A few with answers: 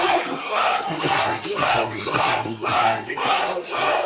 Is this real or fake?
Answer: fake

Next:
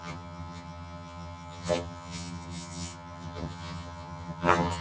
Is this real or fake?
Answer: fake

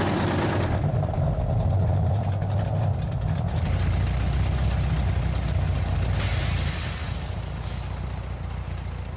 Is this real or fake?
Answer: real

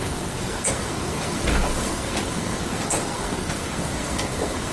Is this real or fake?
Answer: fake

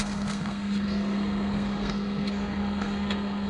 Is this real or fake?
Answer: fake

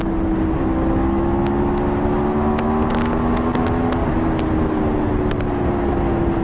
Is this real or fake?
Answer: real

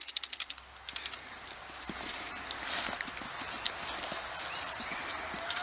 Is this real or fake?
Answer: real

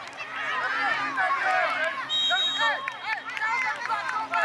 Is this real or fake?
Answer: real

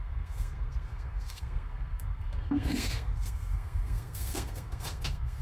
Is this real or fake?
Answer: fake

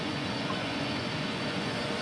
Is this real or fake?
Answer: fake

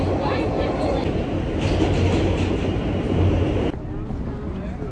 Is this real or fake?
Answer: real